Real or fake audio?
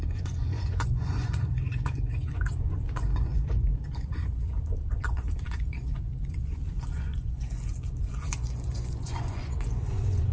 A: fake